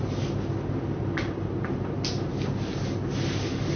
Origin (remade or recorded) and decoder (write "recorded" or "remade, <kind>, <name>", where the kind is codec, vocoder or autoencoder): recorded